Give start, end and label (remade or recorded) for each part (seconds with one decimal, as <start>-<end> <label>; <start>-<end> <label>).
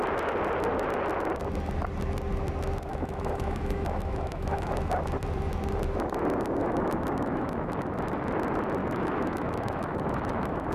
0.0-2.9 recorded; 2.9-4.7 remade; 4.7-6.6 recorded; 6.6-7.8 remade; 7.8-8.8 recorded; 8.8-10.7 remade